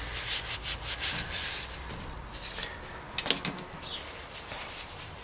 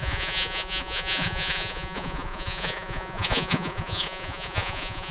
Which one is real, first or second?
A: first